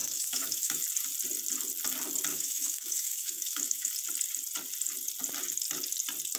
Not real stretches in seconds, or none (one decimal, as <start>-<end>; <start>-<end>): 0.0-0.8; 2.3-3.9